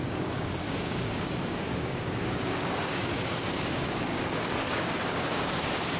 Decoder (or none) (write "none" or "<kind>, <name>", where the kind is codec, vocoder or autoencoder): codec, DAC